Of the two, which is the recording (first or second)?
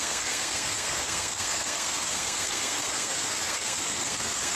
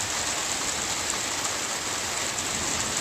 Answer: second